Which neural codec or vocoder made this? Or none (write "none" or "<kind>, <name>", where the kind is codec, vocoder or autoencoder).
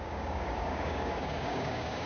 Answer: codec, DAC